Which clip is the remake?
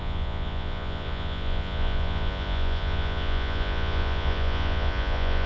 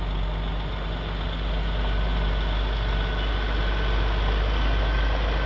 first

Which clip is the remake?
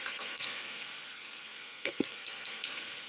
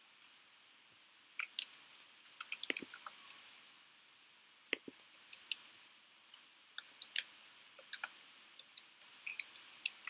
first